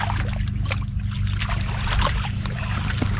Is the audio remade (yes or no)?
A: no